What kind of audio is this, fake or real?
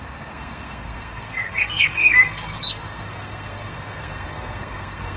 fake